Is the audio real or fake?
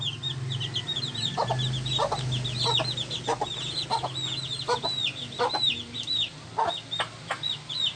real